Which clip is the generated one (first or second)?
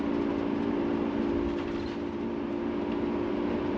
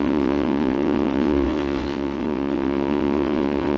second